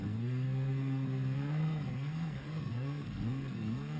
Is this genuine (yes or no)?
no